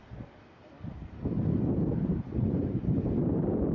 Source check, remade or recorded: recorded